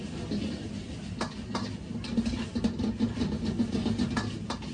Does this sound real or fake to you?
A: real